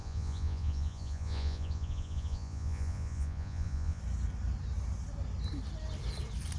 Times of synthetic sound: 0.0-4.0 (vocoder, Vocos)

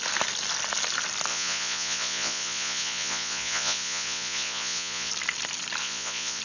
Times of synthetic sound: 1.3-5.1 (vocoder, Vocos); 5.8-6.4

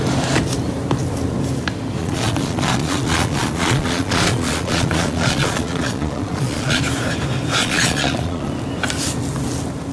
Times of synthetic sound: 2.0-6.8 (vocoder, Vocos); 7.6-8.5

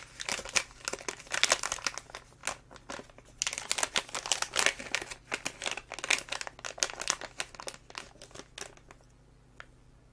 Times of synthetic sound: none

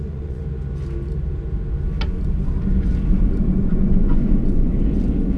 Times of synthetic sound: 0.0-0.4 (vocoder, Vocos); 3.6-4.7

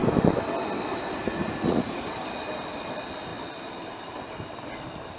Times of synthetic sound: 1.2-2.2 (vocoder, Vocos)

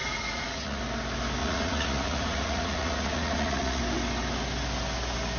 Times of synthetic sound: 0.0-0.8 (vocoder, Vocos); 1.4-3.8

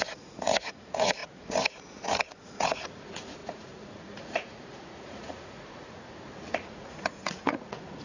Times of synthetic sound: 0.0-8.0 (vocoder, Vocos)